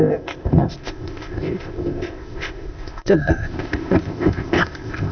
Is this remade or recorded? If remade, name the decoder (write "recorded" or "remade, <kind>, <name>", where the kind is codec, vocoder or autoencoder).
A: remade, codec, ZipCodec